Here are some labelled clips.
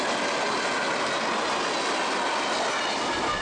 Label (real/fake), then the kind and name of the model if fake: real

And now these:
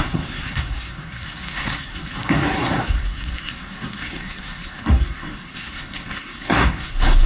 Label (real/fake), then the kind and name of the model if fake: fake, codec, SNAC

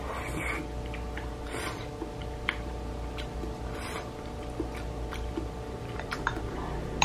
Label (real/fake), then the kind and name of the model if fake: real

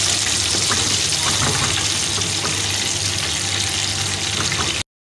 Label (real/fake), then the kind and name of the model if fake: real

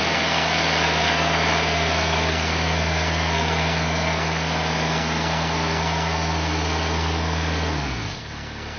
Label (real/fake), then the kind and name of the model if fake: fake, codec, SNAC